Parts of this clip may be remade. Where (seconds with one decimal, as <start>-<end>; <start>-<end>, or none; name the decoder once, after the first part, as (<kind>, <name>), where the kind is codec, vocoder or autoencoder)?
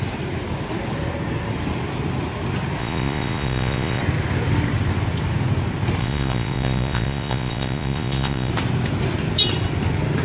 2.8-4.0 (vocoder, Vocos); 6.0-8.5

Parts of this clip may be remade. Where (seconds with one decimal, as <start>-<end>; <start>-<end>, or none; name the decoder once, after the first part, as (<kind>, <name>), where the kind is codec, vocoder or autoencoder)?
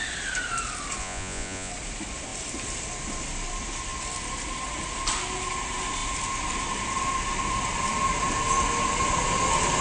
1.0-1.7 (vocoder, Vocos)